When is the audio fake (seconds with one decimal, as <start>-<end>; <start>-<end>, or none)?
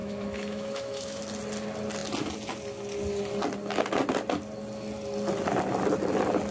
0.0-1.2